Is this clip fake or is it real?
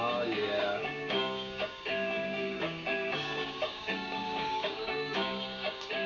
fake